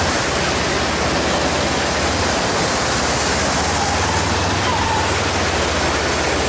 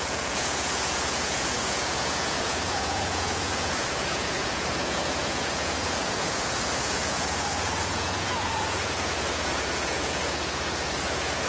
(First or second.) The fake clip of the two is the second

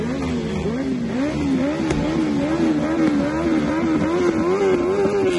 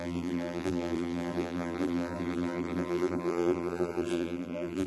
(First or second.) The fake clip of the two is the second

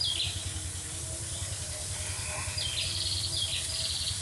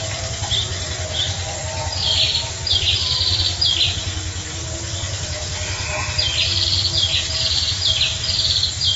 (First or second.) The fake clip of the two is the first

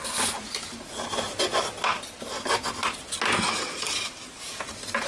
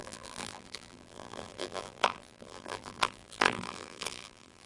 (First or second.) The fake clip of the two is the second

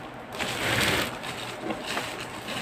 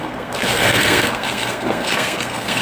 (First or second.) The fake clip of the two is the second